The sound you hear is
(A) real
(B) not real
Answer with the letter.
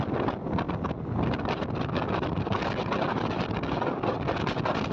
A